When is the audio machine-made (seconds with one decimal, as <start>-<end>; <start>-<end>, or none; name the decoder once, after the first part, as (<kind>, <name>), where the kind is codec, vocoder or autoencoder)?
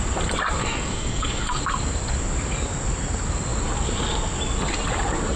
0.6-1.6 (codec, DAC)